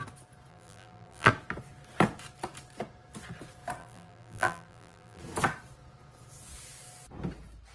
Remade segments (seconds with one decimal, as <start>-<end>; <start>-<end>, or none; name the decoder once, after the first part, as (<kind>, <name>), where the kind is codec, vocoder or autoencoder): 0.5-1.3 (vocoder, BigVGAN v2); 3.8-5.2